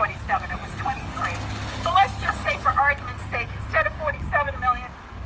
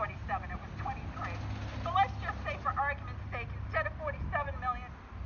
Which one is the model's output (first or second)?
first